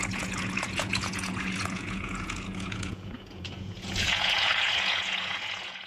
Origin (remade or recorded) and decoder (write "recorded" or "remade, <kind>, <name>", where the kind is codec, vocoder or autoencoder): remade, vocoder, Vocos